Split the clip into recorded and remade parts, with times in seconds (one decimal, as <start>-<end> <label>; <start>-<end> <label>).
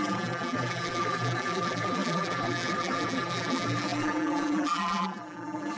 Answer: 0.0-5.8 remade